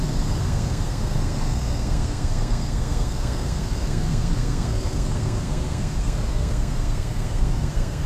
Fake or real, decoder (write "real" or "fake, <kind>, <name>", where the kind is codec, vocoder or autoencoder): fake, codec, SNAC